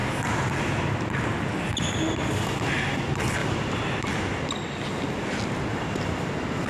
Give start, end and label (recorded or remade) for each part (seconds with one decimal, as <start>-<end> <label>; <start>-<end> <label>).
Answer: 0.0-3.4 recorded; 3.4-4.2 remade; 4.2-5.7 recorded; 5.7-6.3 remade; 6.3-6.7 recorded